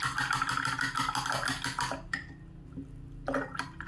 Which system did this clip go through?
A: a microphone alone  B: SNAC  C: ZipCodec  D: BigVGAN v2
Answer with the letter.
A